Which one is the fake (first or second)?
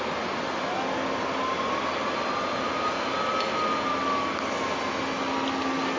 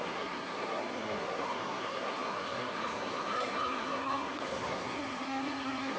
second